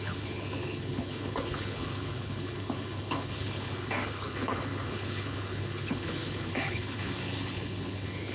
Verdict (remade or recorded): remade